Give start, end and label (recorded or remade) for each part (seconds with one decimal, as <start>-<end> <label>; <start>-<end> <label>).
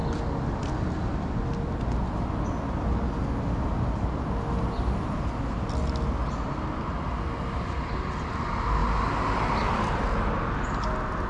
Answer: 0.0-11.3 recorded